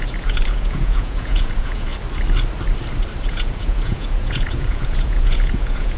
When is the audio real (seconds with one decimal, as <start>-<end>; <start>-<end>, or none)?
1.9-3.3